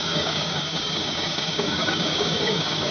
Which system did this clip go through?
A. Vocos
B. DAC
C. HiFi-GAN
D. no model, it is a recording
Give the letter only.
B